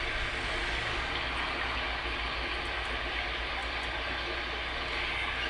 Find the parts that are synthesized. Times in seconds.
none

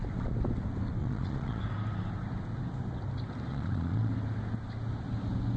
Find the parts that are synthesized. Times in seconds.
1.0-1.6 (vocoder, Vocos); 3.5-4.1

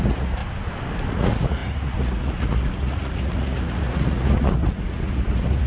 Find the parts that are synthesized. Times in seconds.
0.0-0.4 (vocoder, Vocos); 1.1-5.7

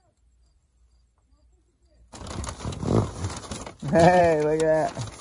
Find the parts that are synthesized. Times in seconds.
none

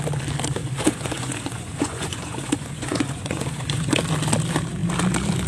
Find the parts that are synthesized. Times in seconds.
0.6-3.9 (vocoder, Vocos)